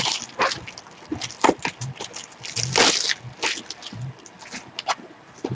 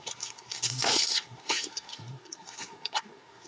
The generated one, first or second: second